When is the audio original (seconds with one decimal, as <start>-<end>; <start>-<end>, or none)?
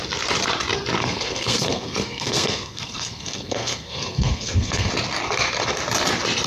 0.0-1.0; 4.9-6.5